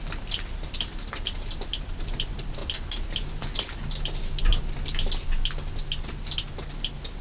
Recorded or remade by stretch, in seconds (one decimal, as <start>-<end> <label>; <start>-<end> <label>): 0.0-2.6 remade; 2.6-3.3 recorded; 3.3-4.5 remade; 4.5-7.2 recorded